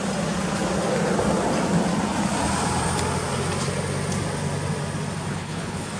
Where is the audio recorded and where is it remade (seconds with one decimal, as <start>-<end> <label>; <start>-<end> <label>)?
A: 0.0-5.3 recorded; 5.3-6.0 remade